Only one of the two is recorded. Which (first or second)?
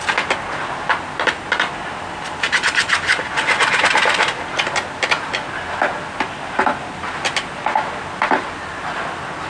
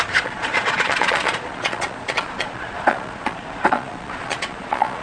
first